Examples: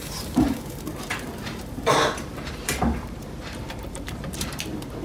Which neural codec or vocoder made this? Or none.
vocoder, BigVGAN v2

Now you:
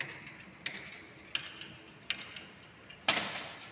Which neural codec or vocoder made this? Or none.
none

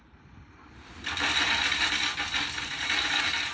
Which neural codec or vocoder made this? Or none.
none